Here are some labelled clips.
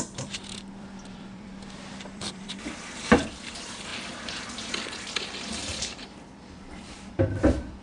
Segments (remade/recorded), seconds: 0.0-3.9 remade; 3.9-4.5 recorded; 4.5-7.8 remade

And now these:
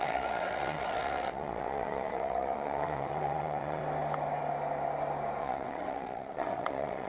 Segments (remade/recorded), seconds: 0.0-3.8 remade; 3.8-5.4 recorded; 5.4-7.1 remade

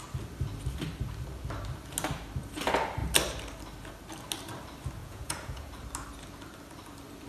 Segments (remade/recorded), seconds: 0.0-5.0 recorded; 5.0-5.7 remade; 5.7-7.3 recorded